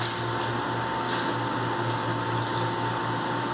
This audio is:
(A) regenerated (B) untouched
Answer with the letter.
B